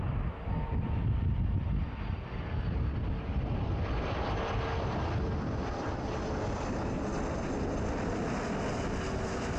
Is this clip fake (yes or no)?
no